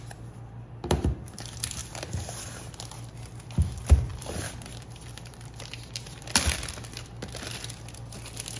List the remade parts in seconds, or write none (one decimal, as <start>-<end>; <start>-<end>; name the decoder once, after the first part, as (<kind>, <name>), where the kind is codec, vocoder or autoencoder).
4.1-6.7 (vocoder, BigVGAN v2)